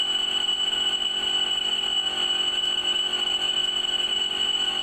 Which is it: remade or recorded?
recorded